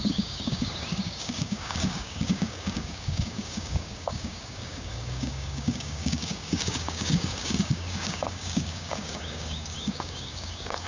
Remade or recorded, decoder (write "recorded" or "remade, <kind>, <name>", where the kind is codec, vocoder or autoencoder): remade, codec, DAC